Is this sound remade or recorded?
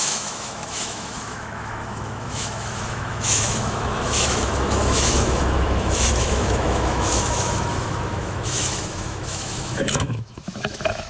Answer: remade